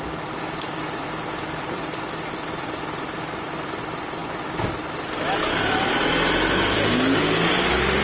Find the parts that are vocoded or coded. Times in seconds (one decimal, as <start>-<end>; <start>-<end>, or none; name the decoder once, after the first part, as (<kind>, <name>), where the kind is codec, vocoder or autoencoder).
none